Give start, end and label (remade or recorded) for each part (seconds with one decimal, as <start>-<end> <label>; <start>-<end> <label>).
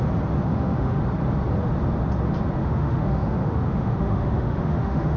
0.0-0.5 recorded; 0.5-1.0 remade; 1.0-2.6 recorded; 2.6-5.2 remade